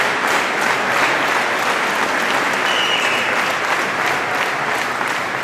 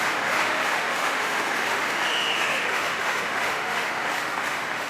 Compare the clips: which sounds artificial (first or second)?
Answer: second